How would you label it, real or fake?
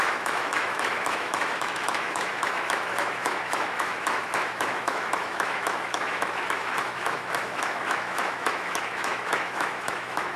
fake